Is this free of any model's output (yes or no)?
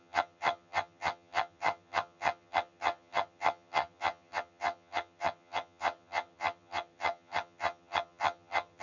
no